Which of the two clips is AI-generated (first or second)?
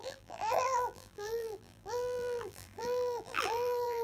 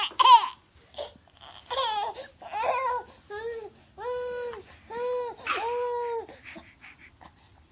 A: first